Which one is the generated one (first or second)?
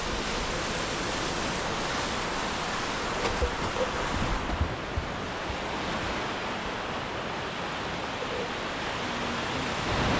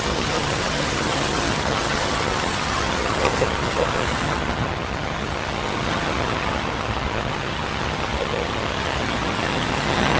second